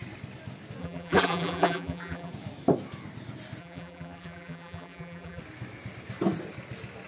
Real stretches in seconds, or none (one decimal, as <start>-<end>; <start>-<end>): 0.0-0.8; 2.3-3.6; 5.4-7.1